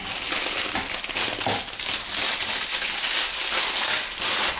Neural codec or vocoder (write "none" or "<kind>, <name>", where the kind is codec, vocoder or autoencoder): none